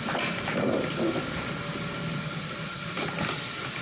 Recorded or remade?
recorded